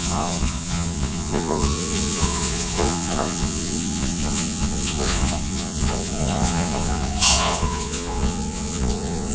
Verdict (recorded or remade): remade